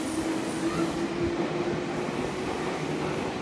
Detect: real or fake real